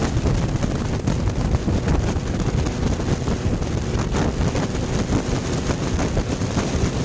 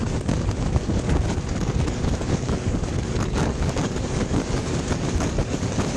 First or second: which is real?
first